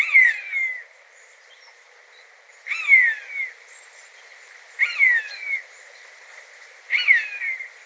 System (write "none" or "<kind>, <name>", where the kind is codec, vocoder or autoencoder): none